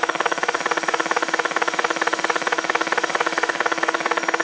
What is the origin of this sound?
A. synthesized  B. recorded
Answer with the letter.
A